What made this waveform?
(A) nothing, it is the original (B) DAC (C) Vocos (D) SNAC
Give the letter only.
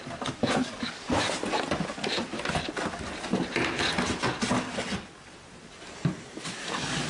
A